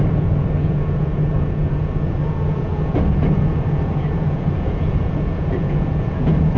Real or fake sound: fake